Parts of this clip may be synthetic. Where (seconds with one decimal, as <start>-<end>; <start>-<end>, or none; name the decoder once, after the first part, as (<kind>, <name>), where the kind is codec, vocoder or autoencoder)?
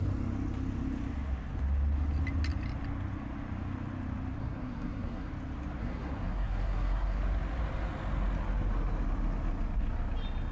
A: 4.4-5.3 (codec, SNAC); 5.8-7.2